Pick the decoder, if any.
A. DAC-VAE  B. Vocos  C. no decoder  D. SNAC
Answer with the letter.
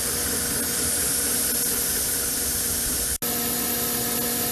C